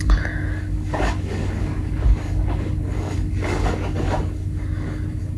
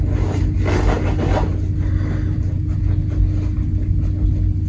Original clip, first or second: second